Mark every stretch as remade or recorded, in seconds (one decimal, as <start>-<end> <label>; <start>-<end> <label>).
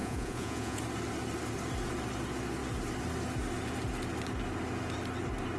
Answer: 0.0-0.8 remade; 0.8-5.6 recorded